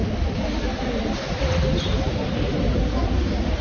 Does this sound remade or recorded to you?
recorded